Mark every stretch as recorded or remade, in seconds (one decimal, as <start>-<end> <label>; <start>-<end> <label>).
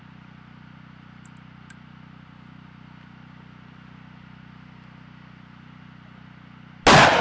0.0-7.2 recorded